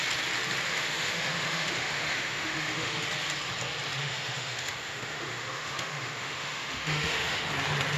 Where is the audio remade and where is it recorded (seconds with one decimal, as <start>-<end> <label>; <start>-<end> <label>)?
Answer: 0.0-0.7 recorded; 0.7-3.0 remade; 3.0-4.0 recorded; 4.0-7.5 remade; 7.5-8.0 recorded